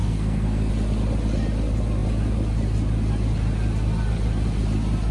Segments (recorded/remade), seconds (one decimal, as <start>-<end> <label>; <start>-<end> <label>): 0.0-0.7 remade; 0.7-5.1 recorded